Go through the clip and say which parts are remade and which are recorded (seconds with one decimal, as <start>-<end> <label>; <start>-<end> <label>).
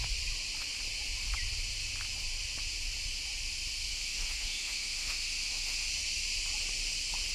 0.0-3.9 recorded; 3.9-5.9 remade; 5.9-7.3 recorded